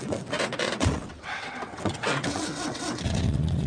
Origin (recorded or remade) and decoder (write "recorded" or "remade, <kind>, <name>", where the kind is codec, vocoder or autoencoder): remade, vocoder, WaveNeXt